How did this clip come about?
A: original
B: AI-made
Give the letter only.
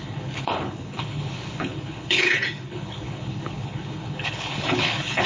B